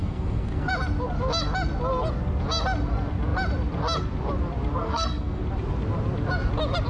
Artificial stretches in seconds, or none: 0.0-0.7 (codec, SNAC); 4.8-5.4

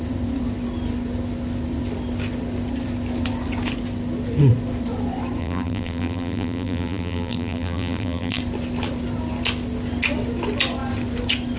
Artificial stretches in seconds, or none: 5.4-8.4 (vocoder, BigVGAN v2)